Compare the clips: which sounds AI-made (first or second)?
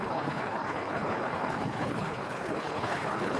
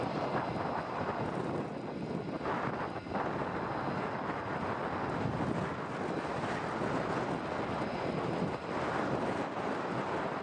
first